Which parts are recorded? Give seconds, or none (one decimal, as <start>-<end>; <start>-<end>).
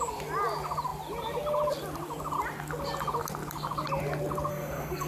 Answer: 0.0-4.5